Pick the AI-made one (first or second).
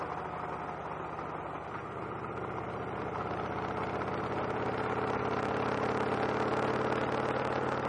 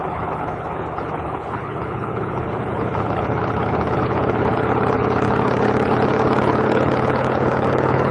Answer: second